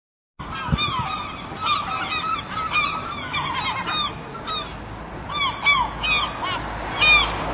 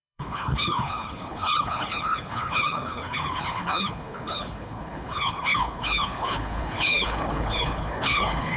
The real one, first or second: first